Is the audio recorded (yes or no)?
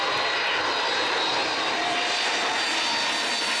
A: yes